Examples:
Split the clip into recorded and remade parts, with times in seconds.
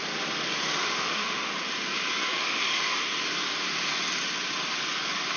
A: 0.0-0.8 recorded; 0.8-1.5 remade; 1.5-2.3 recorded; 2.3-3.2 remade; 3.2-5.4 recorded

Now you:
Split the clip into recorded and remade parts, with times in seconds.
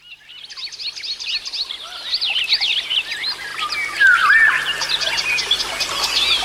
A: 0.0-6.4 recorded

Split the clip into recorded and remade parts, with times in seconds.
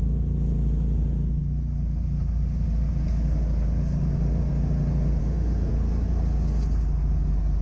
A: 0.0-5.2 recorded; 5.2-5.7 remade; 5.7-7.6 recorded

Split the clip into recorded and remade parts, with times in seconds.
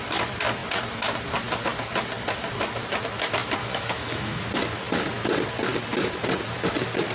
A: 0.0-3.6 recorded; 3.6-4.4 remade; 4.4-7.1 recorded